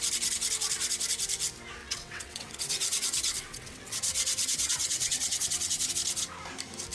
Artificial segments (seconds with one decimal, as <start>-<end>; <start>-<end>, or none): 1.8-5.9